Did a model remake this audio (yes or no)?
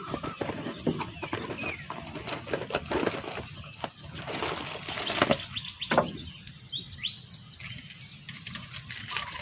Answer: no